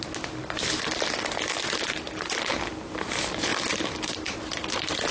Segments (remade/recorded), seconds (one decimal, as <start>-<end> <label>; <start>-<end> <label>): 0.0-0.4 recorded; 0.4-1.4 remade; 1.4-5.1 recorded

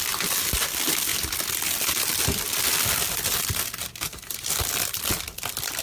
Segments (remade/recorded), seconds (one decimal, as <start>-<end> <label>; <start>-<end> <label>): 0.0-5.8 recorded

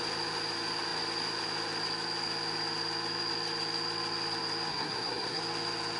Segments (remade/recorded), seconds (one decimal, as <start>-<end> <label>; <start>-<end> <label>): 0.0-4.7 recorded; 4.7-5.4 remade; 5.4-6.0 recorded

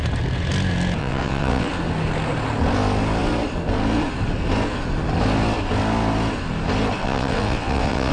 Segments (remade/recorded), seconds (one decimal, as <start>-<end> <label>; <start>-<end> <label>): 0.0-1.0 recorded; 1.0-1.7 remade; 1.7-7.0 recorded; 7.0-8.1 remade

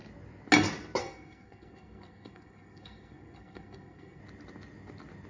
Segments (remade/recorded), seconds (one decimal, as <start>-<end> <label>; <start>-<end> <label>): 0.0-1.0 recorded; 1.0-4.2 remade; 4.2-5.3 recorded